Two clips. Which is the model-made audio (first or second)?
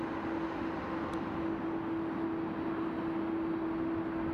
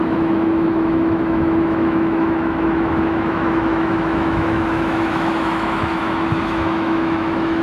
second